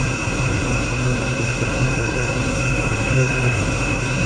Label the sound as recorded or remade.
remade